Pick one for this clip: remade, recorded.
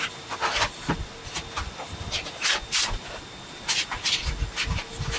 recorded